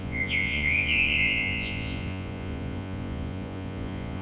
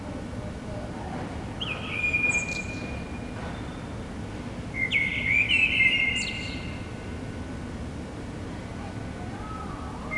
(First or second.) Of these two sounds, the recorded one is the second